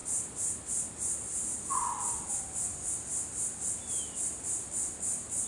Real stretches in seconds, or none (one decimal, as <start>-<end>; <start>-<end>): 2.3-5.5